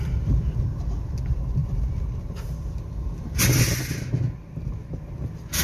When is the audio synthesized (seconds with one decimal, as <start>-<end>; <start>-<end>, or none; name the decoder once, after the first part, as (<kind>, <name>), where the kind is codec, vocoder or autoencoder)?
none